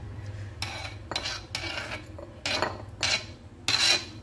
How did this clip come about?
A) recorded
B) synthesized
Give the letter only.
A